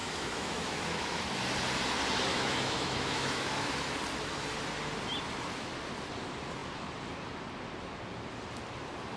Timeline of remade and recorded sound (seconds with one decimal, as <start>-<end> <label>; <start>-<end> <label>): 0.0-1.2 remade; 1.2-2.3 recorded; 2.3-3.7 remade; 3.7-9.2 recorded